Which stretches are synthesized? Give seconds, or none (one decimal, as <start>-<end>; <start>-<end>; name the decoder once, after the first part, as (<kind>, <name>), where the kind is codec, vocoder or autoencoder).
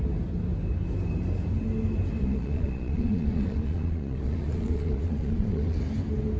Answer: 2.2-5.8 (vocoder, Vocos)